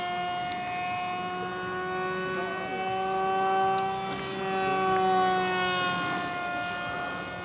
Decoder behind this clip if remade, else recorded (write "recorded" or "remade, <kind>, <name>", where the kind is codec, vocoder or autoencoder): recorded